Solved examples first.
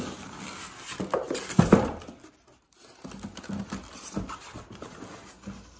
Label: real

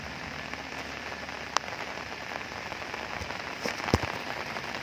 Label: real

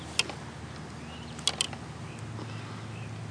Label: real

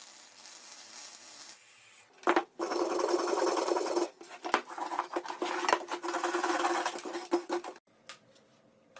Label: real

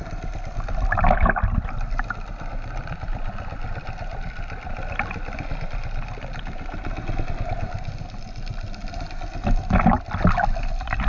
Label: real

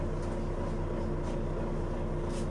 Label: real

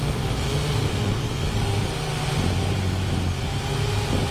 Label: real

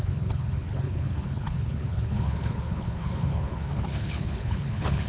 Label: fake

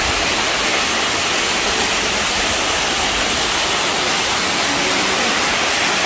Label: real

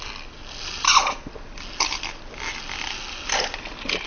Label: real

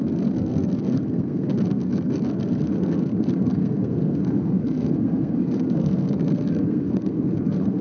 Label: fake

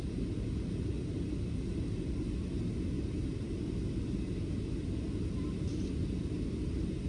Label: real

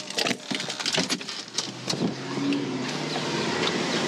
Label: real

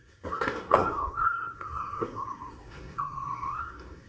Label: fake